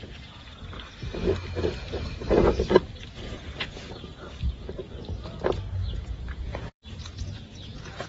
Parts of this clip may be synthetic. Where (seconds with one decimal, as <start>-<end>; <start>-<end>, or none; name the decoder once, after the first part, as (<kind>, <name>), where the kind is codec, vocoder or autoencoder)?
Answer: 0.0-0.5 (vocoder, Vocos); 3.0-4.1; 5.9-8.1